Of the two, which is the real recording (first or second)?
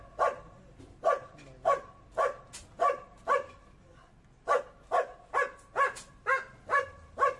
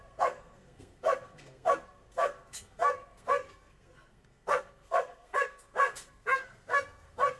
first